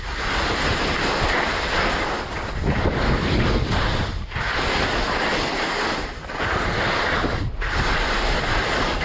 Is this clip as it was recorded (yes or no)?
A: yes